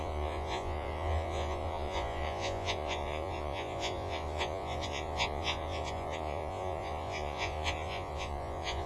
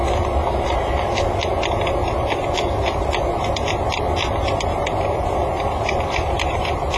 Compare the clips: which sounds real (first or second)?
second